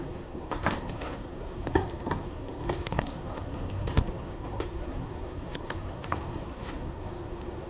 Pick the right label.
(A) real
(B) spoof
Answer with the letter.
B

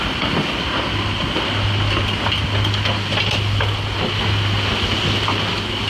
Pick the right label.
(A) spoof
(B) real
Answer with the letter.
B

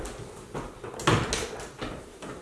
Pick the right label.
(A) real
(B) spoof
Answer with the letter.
A